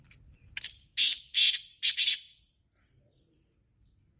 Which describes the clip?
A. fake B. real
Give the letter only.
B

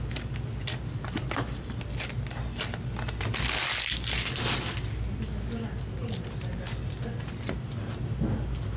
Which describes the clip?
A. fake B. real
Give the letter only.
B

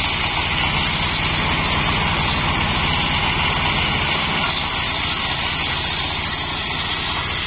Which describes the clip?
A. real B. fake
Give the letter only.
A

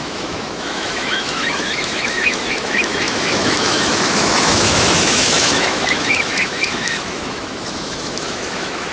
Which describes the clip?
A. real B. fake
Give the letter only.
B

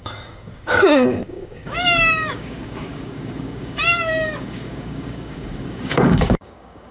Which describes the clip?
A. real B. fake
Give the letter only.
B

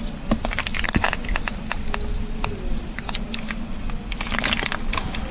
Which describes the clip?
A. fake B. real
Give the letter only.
B